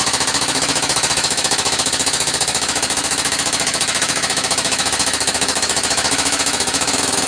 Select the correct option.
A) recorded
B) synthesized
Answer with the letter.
B